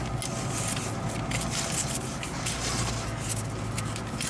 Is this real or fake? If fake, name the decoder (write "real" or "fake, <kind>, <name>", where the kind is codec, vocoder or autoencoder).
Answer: real